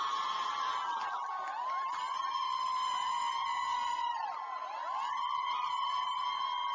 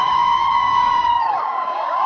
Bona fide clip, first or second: first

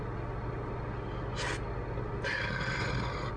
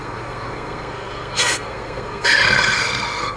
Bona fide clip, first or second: first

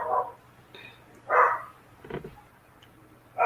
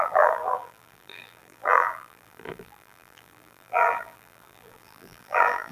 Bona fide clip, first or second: first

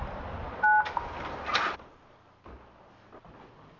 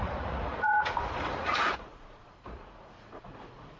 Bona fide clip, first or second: first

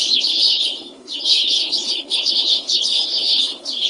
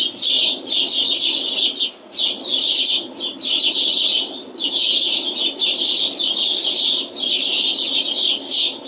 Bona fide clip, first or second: second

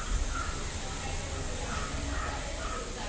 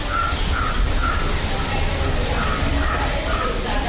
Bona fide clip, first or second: first